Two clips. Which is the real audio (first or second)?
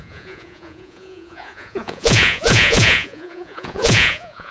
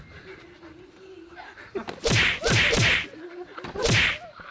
second